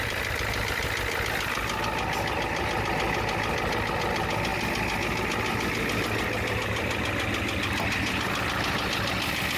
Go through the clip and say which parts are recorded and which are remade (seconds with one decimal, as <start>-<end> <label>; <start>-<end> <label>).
0.0-9.6 recorded